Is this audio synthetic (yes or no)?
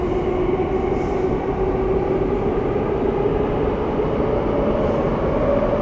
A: no